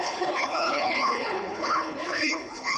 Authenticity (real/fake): fake